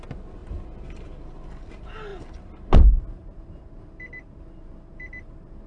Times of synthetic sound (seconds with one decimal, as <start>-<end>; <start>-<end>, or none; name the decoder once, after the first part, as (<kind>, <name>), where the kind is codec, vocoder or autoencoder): none